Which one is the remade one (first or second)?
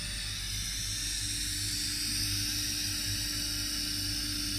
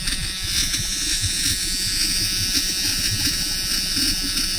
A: second